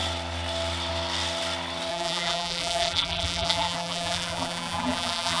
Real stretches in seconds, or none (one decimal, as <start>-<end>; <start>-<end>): 0.0-1.9

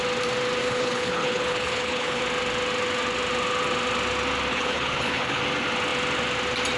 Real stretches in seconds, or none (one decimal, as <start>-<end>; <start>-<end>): 0.0-0.6; 2.2-4.5; 5.4-6.8

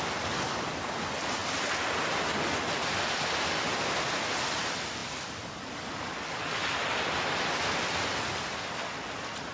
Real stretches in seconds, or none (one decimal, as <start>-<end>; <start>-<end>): 0.0-9.5

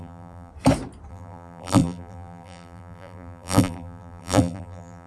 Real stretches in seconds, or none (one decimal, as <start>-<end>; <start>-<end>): 0.5-1.1

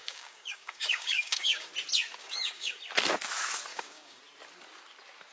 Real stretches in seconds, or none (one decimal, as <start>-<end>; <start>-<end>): 1.7-2.2; 2.8-3.7; 4.2-5.3